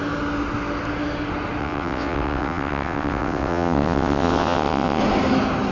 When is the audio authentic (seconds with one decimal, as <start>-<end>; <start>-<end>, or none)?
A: 0.0-1.6; 5.0-5.7